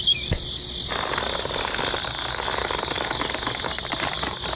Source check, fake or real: real